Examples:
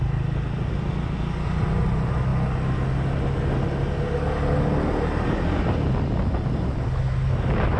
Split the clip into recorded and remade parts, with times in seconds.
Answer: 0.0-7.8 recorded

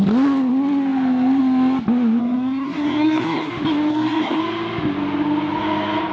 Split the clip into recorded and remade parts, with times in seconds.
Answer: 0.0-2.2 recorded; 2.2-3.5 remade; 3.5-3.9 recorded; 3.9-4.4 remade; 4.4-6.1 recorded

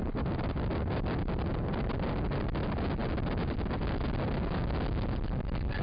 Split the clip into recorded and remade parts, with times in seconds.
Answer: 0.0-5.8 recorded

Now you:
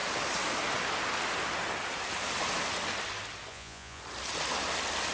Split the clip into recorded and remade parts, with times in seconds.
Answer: 0.0-3.5 recorded; 3.5-4.0 remade; 4.0-5.1 recorded